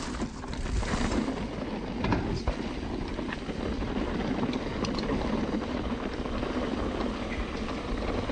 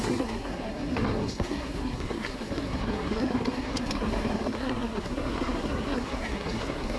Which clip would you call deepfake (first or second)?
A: second